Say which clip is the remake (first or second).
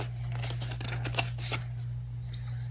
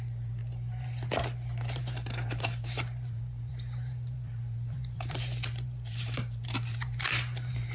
second